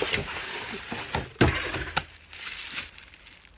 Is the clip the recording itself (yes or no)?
yes